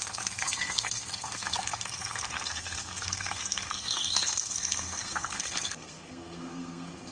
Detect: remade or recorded remade